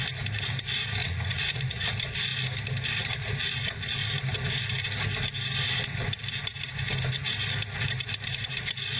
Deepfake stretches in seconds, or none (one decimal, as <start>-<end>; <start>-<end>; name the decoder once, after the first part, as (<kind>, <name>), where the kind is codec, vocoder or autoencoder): 1.0-1.9 (vocoder, Vocos)